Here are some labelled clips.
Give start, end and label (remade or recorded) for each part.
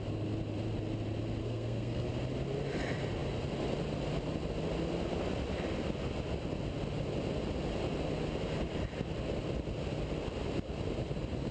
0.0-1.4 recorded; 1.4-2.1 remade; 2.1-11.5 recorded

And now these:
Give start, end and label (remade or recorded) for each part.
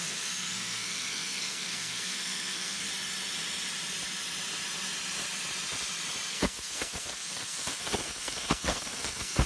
0.0-2.9 remade; 2.9-6.3 recorded; 6.3-9.5 remade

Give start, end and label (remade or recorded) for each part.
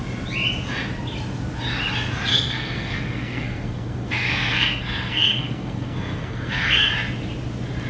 0.0-2.3 recorded; 2.3-6.9 remade; 6.9-7.9 recorded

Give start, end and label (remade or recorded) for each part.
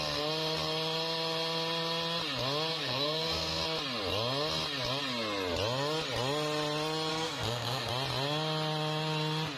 0.0-2.7 recorded; 2.7-3.6 remade; 3.6-7.1 recorded; 7.1-7.9 remade; 7.9-9.6 recorded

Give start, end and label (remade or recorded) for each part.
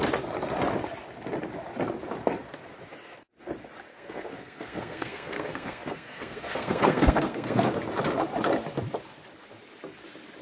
0.0-3.9 recorded; 3.9-7.7 remade; 7.7-10.4 recorded